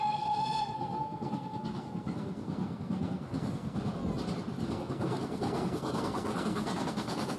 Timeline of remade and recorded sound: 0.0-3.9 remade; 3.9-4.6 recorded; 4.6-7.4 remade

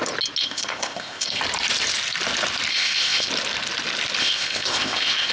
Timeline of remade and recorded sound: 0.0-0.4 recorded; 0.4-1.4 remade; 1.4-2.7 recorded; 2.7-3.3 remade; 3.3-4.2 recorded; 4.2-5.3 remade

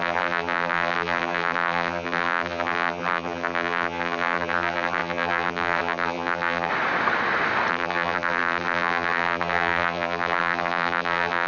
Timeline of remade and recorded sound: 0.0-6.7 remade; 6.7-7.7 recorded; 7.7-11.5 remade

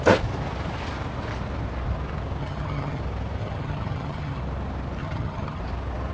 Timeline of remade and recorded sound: 0.0-2.4 recorded; 2.4-3.0 remade; 3.0-3.4 recorded; 3.4-4.4 remade; 4.4-5.0 recorded; 5.0-5.6 remade; 5.6-6.1 recorded

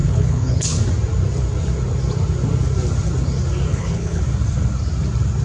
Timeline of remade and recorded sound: 0.0-0.8 remade; 0.8-3.7 recorded; 3.7-4.2 remade; 4.2-5.4 recorded

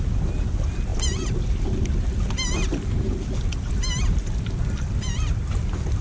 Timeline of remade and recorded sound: 0.0-6.0 recorded

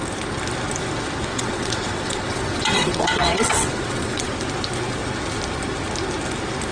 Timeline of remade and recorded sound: 0.0-1.3 recorded; 1.3-4.3 remade; 4.3-6.7 recorded